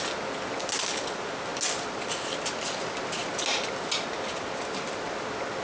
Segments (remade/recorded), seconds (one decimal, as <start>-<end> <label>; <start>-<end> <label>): 0.0-5.6 recorded